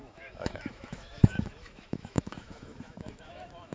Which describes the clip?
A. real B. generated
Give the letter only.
B